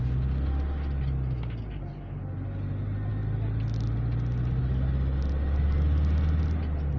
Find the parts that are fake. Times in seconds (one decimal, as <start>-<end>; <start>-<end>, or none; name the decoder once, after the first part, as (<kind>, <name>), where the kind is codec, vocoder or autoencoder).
none